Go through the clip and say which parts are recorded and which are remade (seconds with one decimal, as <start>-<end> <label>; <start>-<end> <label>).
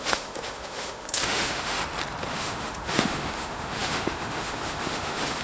0.0-1.8 remade; 1.8-2.3 recorded; 2.3-5.4 remade